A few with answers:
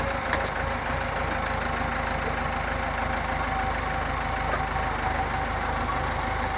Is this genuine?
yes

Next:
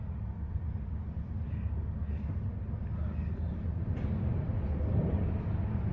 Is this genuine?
yes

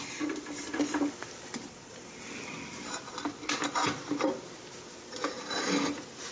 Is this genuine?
yes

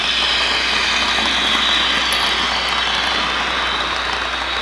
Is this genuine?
yes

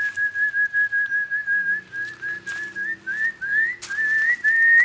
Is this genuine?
yes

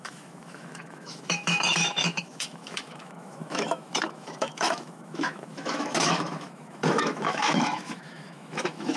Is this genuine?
no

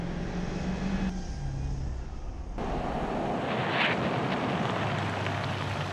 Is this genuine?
yes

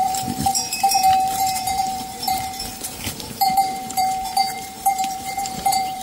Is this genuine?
no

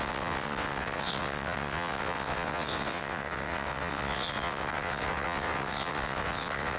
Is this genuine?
no